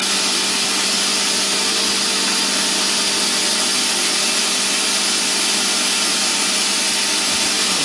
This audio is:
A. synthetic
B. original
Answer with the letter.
B